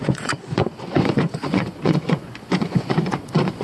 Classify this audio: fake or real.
fake